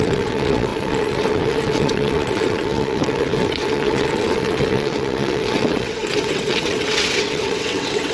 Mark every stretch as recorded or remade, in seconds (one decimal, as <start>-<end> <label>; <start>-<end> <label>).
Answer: 0.0-8.1 remade